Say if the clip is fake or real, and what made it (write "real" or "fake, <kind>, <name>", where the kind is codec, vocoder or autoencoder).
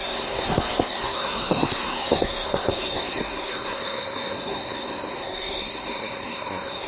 fake, codec, SNAC